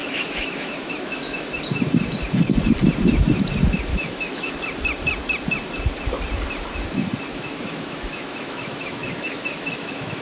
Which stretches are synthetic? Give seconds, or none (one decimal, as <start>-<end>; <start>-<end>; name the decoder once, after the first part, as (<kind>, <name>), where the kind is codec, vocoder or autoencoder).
0.0-1.5 (autoencoder, DAC-VAE); 3.9-4.5; 7.3-10.2